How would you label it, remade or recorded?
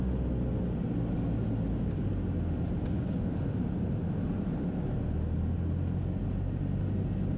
recorded